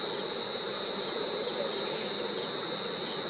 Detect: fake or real real